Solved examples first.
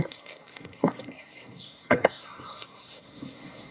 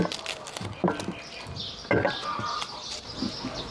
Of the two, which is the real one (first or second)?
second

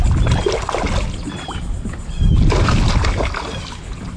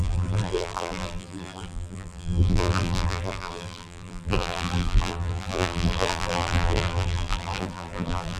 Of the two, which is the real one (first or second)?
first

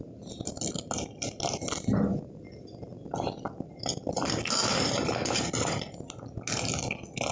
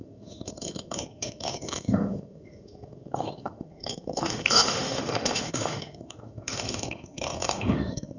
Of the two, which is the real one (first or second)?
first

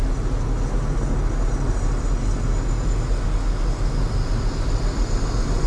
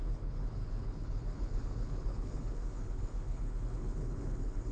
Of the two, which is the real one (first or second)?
first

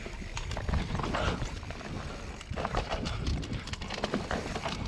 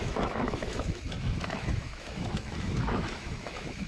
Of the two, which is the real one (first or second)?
first